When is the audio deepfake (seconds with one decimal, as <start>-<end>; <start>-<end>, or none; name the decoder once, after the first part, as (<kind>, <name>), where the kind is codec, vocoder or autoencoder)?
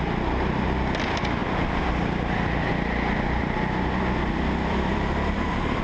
1.4-2.7 (vocoder, BigVGAN v2); 3.4-5.8